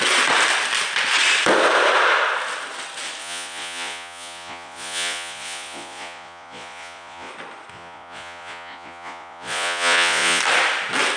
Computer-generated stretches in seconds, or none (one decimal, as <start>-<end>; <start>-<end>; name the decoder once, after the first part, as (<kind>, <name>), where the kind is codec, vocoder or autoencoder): 3.2-7.3 (vocoder, Vocos); 7.7-10.4